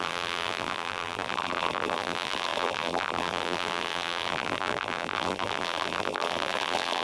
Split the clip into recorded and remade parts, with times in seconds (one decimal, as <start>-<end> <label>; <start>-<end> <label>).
0.0-7.0 remade